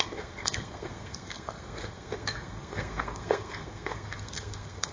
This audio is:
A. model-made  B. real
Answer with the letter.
A